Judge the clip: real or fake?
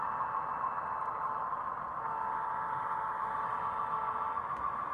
real